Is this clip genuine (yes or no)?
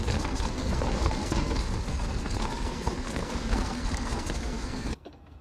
no